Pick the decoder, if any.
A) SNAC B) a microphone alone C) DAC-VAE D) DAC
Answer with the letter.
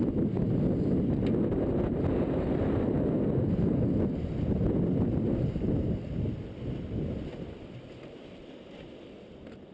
B